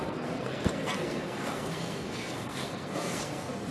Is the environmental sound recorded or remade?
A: remade